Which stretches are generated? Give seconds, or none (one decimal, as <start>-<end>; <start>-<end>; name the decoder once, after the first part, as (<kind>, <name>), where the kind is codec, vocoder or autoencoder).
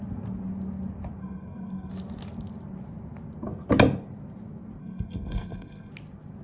1.2-1.9 (codec, SNAC); 4.8-5.9